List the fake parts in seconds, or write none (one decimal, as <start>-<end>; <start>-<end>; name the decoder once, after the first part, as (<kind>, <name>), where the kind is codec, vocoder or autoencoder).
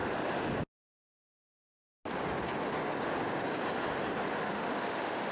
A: 4.4-5.3 (autoencoder, DAC-VAE)